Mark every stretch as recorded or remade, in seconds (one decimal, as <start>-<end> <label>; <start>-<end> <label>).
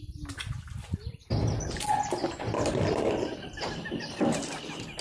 0.0-5.0 recorded